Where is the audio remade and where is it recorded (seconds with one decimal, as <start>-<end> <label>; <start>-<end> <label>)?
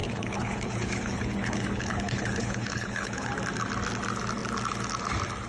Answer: 0.0-3.3 remade; 3.3-5.5 recorded